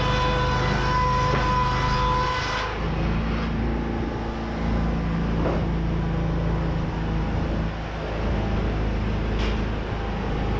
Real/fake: real